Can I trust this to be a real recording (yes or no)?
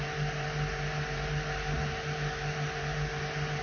yes